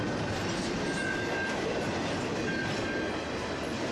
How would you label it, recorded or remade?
recorded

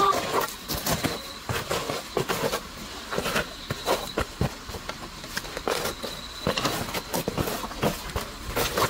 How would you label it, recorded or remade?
recorded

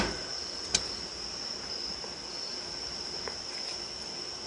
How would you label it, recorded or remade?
recorded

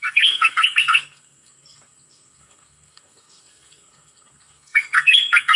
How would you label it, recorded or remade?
remade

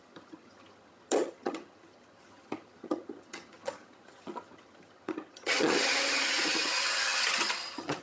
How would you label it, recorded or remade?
remade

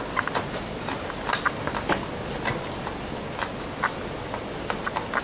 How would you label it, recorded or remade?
recorded